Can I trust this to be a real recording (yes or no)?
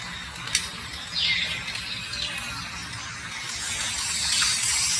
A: yes